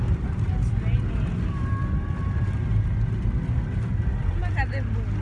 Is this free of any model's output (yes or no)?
yes